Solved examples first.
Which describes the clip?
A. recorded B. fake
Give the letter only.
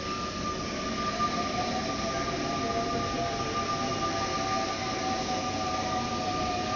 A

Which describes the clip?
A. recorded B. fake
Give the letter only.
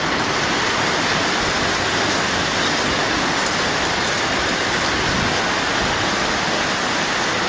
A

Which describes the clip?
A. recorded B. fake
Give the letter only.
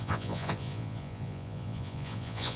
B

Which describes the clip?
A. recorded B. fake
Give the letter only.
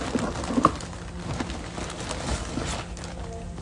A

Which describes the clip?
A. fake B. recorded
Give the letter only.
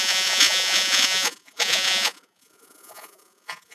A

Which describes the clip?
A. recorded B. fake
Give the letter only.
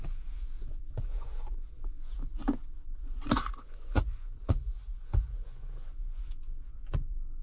B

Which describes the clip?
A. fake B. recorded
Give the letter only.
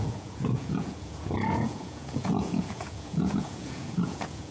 A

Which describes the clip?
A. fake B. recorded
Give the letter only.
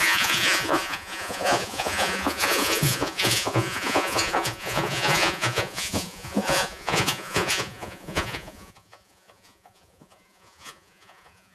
A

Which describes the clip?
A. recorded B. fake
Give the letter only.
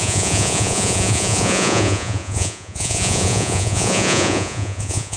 B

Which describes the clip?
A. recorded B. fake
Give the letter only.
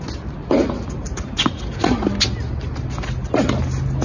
A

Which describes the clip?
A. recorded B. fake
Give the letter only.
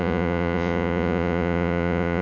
B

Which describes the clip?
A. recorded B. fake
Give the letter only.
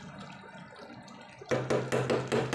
A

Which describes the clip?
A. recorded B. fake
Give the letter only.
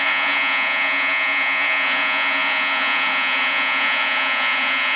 B